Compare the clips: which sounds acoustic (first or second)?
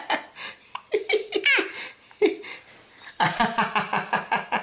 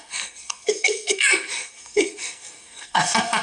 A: first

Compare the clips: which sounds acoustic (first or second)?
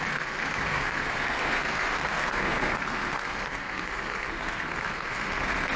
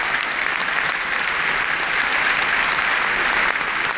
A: second